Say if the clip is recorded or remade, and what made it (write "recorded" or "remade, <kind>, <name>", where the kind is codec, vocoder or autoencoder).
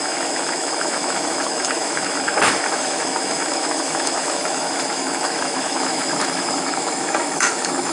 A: remade, autoencoder, DAC-VAE